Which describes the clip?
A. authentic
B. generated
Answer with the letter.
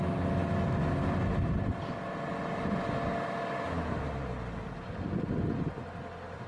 A